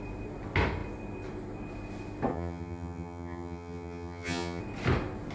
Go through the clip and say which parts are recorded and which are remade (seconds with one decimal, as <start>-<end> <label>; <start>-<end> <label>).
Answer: 0.0-2.3 recorded; 2.3-4.6 remade; 4.6-5.3 recorded